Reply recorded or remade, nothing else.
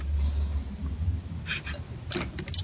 recorded